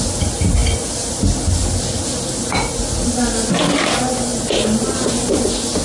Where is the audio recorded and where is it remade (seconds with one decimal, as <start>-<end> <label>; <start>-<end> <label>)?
0.0-5.8 recorded